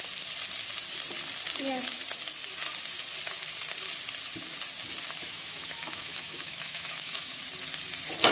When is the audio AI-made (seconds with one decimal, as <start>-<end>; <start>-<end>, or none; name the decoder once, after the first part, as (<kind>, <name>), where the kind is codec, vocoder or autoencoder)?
5.2-7.4 (autoencoder, DAC-VAE)